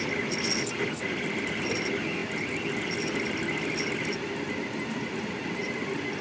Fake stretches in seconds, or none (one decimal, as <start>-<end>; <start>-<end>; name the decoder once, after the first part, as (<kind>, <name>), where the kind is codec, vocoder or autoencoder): none